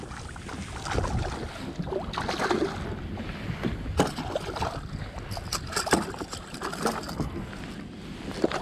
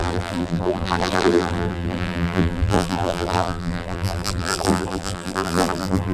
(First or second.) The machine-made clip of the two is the second